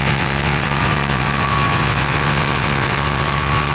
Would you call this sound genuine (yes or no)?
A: no